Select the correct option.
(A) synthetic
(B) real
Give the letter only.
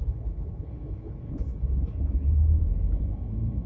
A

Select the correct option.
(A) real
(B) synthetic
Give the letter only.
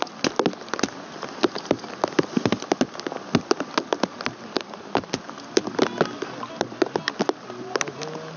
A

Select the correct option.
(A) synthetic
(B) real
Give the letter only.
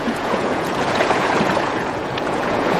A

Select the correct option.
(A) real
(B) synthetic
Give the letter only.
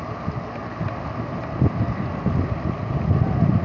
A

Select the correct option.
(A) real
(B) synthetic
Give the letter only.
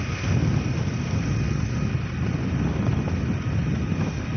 A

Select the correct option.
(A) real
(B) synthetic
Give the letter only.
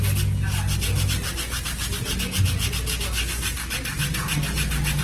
A